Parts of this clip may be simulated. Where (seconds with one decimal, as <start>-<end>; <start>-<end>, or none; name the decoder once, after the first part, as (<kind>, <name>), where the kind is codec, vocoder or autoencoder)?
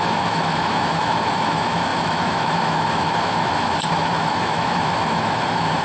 0.0-5.8 (autoencoder, DAC-VAE)